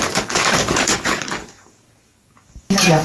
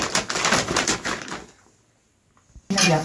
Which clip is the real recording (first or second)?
second